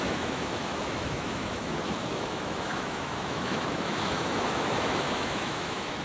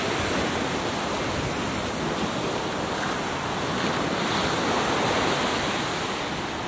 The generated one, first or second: first